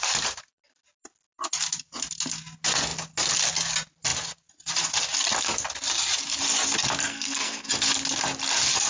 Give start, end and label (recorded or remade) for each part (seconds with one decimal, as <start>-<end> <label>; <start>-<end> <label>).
0.0-7.1 recorded; 7.1-7.7 remade; 7.7-8.9 recorded